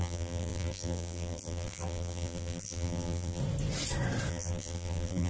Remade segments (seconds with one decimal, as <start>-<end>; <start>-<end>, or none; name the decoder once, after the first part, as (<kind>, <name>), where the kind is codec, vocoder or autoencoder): 0.0-3.4 (vocoder, BigVGAN v2); 4.3-5.3